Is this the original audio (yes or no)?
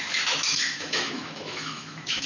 no